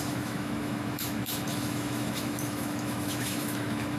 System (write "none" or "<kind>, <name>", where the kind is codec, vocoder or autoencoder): autoencoder, DAC-VAE